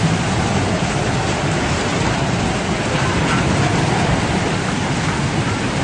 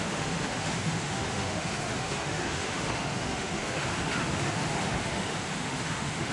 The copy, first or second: second